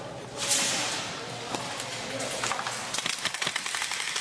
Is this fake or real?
real